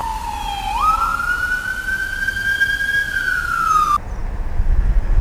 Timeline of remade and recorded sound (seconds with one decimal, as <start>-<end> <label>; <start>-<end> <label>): 0.0-5.2 recorded

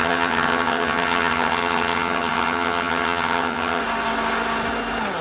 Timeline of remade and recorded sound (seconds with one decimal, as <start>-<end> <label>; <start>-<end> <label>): 0.0-3.8 remade; 3.8-5.2 recorded

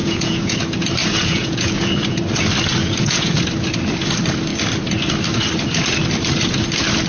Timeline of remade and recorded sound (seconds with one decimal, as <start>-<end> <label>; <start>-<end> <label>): 0.0-0.6 remade; 0.6-1.0 recorded; 1.0-2.2 remade; 2.2-2.8 recorded; 2.8-3.4 remade; 3.4-7.1 recorded

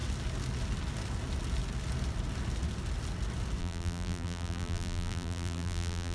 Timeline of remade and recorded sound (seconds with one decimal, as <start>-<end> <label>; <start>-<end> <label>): 0.0-3.6 recorded; 3.6-6.1 remade